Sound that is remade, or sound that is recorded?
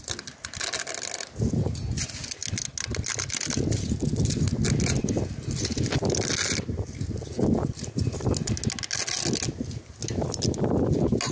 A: recorded